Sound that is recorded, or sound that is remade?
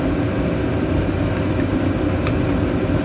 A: recorded